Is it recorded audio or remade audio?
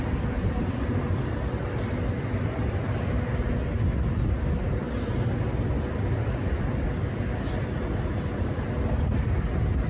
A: recorded